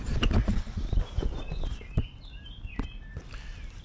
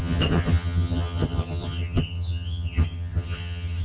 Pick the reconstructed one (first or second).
second